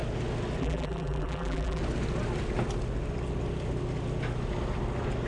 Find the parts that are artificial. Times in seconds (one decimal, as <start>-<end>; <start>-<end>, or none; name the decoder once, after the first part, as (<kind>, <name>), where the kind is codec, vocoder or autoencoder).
0.6-1.8 (vocoder, BigVGAN v2)